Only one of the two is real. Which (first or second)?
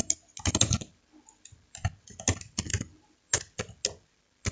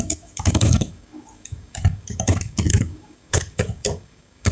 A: first